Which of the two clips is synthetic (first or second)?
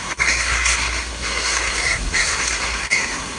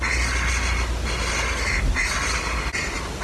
first